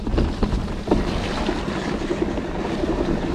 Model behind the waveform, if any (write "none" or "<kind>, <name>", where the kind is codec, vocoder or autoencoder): none